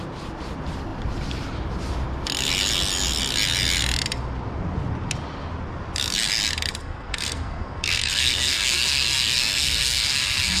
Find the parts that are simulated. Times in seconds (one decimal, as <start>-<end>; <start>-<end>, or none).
6.8-10.6